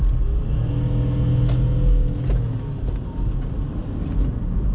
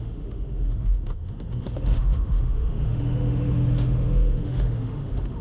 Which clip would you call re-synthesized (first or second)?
second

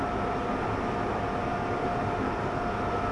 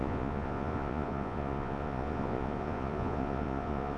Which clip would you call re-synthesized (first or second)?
second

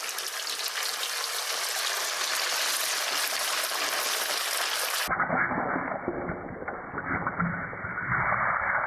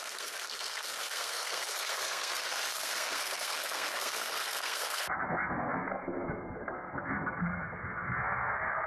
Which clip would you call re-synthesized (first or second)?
second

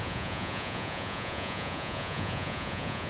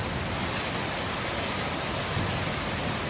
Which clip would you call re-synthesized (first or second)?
first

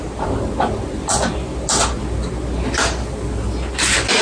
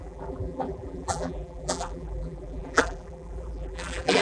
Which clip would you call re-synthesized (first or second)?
second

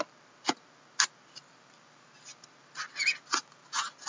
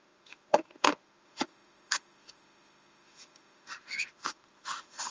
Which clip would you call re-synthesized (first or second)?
second